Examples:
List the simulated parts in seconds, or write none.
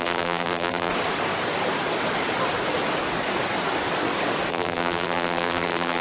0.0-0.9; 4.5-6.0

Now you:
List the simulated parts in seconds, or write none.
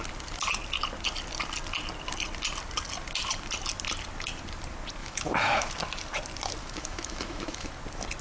5.0-5.7; 6.6-7.7